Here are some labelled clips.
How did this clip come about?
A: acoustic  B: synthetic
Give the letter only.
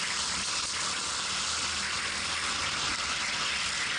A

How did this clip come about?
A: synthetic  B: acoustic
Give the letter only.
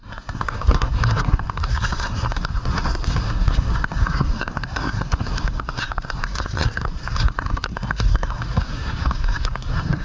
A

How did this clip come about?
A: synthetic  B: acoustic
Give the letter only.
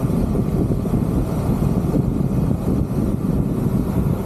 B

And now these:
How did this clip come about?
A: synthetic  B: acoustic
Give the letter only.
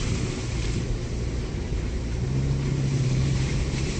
A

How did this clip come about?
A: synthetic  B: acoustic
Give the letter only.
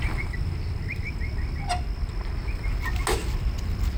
B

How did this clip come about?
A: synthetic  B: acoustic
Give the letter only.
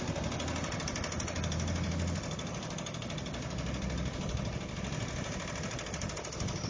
B